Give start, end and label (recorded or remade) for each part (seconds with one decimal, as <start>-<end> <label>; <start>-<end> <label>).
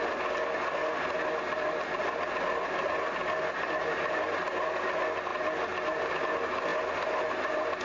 0.0-7.8 recorded